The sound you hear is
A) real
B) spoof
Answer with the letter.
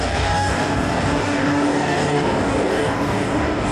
B